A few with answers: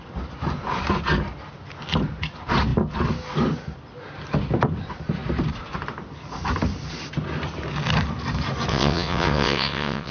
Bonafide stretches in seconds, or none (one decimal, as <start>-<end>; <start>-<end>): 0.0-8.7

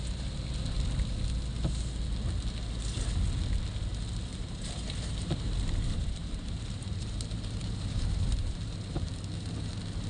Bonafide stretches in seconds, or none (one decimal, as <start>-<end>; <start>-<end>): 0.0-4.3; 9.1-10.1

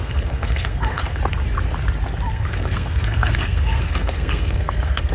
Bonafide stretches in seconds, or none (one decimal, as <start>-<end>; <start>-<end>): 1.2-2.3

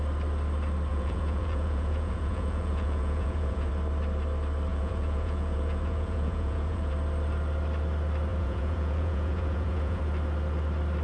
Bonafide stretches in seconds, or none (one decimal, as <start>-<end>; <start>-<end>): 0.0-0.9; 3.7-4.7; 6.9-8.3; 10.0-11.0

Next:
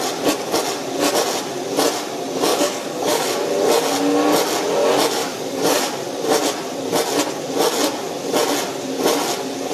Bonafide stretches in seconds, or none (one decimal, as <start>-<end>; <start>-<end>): 0.0-2.5; 3.2-5.2; 5.8-9.7

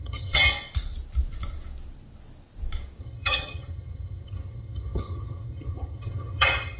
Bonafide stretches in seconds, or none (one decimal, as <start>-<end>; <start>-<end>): 0.5-3.0

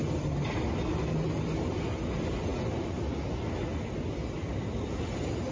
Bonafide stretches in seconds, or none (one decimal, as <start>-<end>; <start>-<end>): 0.0-5.5

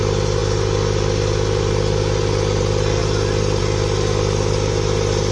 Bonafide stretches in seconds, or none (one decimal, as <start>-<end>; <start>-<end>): 0.0-5.3